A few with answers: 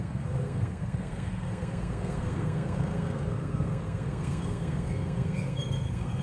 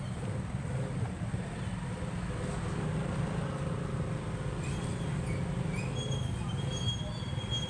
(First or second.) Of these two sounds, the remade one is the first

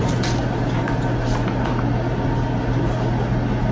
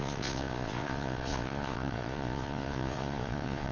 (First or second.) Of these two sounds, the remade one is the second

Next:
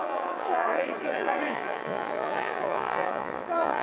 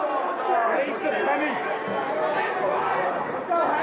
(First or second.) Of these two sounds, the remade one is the first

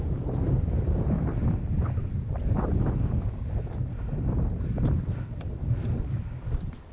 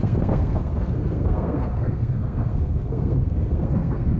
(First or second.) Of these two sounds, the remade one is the second